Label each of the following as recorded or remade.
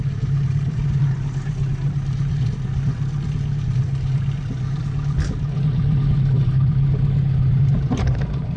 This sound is remade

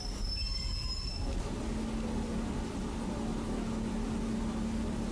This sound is recorded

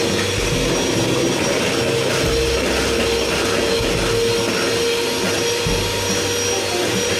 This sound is recorded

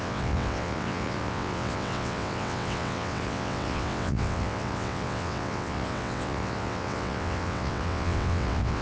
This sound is remade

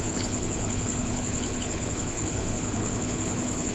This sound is remade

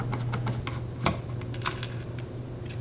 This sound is recorded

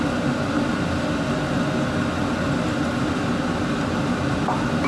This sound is recorded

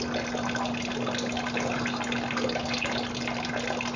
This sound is recorded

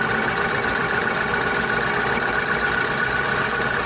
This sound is recorded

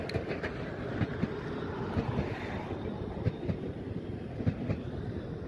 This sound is recorded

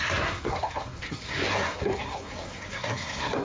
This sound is remade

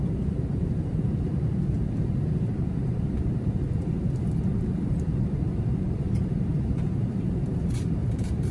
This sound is remade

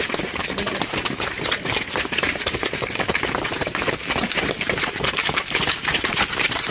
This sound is remade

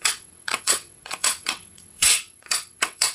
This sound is remade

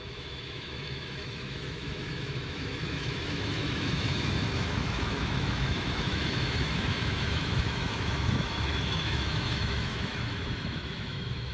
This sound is remade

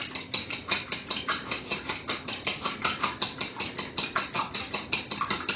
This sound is recorded